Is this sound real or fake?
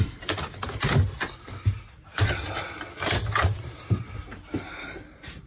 real